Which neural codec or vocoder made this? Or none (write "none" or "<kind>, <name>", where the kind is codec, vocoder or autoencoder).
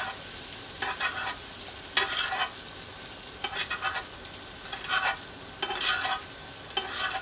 none